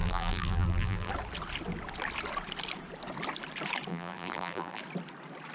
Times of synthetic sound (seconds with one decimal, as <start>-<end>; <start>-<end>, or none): 0.0-1.1; 3.9-4.8